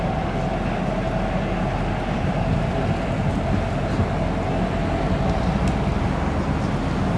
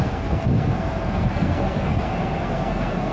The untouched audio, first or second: first